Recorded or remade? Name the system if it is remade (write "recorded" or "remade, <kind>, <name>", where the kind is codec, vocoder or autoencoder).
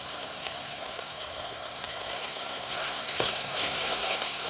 remade, codec, SNAC